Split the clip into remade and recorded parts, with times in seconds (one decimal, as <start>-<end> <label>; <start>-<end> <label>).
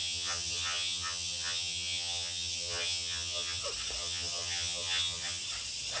0.0-3.6 remade; 3.6-4.0 recorded; 4.0-5.4 remade; 5.4-6.0 recorded